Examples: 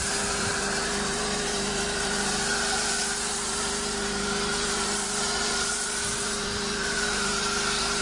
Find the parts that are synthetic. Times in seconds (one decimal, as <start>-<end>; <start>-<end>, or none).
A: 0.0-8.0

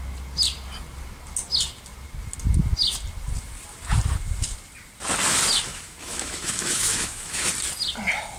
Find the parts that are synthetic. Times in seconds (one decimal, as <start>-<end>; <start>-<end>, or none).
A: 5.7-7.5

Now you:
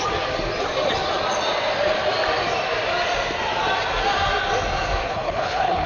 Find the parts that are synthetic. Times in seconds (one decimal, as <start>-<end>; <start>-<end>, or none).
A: 5.0-5.9

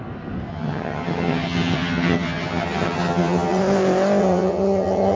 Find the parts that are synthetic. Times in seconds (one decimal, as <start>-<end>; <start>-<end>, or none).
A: 0.5-3.6; 4.2-5.2